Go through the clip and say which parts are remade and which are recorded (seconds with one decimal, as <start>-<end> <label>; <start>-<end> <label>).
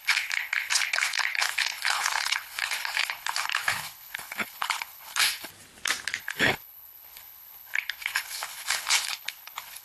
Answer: 0.0-5.5 remade; 5.5-6.2 recorded; 6.2-9.8 remade